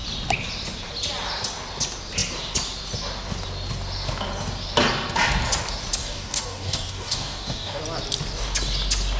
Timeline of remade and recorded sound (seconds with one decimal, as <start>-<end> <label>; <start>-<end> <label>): 0.0-6.0 recorded; 6.0-7.8 remade; 7.8-9.2 recorded